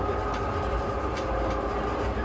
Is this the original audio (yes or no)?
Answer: yes